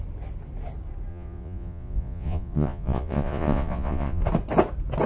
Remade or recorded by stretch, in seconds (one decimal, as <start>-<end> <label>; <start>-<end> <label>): 0.0-1.1 recorded; 1.1-4.2 remade; 4.2-5.1 recorded